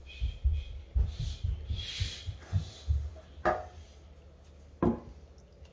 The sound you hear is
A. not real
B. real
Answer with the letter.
B